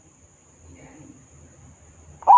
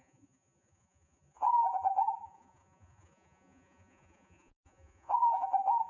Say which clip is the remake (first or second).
second